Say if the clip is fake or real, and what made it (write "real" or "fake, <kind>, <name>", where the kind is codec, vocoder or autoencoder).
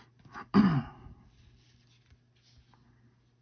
real